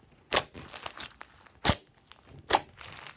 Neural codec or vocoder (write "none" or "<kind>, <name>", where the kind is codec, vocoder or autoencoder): none